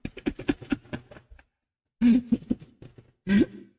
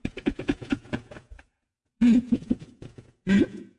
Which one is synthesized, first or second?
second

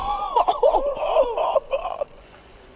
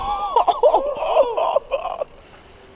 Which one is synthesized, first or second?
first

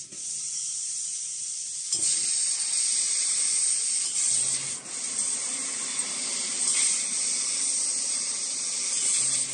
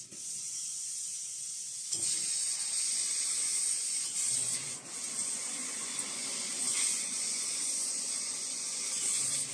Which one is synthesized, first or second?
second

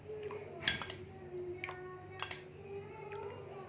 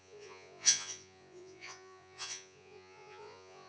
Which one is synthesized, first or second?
second